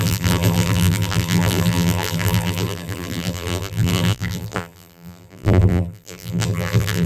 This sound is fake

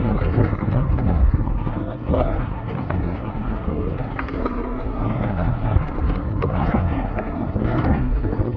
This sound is fake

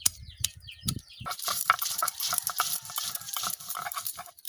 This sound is fake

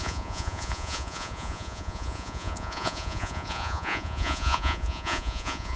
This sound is fake